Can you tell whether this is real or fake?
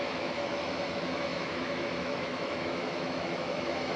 fake